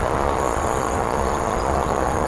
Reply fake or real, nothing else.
fake